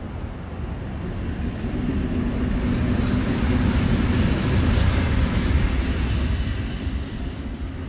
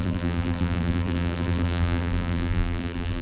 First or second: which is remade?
second